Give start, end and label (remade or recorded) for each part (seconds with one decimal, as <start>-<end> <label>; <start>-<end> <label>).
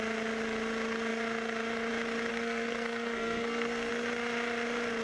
0.0-2.3 recorded; 2.3-3.9 remade; 3.9-5.0 recorded